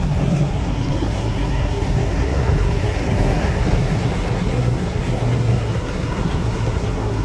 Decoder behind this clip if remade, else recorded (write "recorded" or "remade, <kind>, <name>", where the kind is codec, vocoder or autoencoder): remade, codec, SNAC